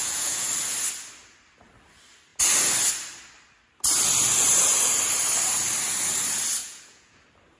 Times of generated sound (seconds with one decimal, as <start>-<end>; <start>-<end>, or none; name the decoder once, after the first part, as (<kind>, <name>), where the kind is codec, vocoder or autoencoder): 0.0-0.5 (vocoder, Vocos); 6.6-7.1